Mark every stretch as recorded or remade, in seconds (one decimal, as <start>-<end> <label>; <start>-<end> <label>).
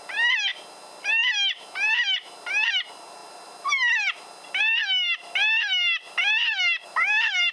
0.0-7.5 recorded